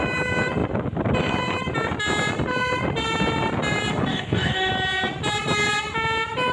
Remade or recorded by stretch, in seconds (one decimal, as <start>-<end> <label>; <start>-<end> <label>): 0.0-4.1 recorded; 4.1-4.7 remade; 4.7-6.5 recorded